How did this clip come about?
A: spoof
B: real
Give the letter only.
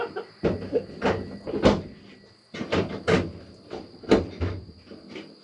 B